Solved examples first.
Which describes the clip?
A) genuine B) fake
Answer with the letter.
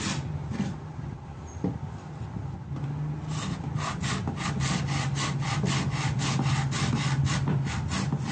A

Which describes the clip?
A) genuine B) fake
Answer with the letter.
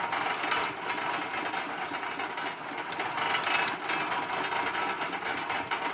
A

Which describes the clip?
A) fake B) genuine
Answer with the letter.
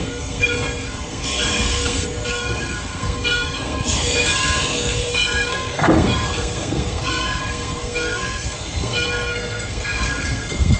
A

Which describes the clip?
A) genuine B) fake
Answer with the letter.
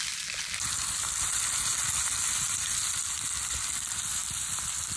A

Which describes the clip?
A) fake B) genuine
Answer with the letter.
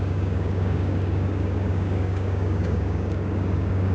A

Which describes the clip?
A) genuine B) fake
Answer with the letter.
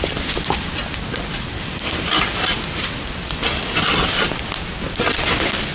A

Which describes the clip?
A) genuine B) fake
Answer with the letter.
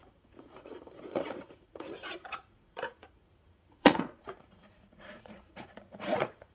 B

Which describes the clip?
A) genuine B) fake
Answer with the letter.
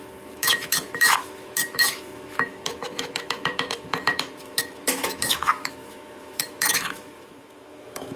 B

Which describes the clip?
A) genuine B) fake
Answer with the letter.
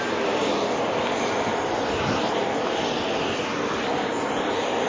A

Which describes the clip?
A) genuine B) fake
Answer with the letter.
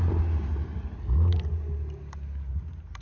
A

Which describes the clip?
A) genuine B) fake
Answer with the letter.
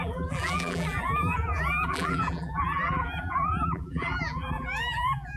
B